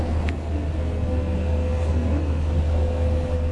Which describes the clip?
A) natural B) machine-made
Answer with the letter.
B